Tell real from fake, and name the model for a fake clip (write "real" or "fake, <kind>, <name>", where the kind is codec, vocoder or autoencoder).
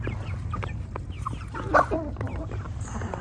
fake, vocoder, BigVGAN v2